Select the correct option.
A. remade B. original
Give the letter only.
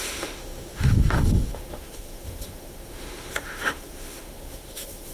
A